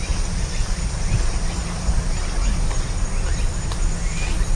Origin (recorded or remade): recorded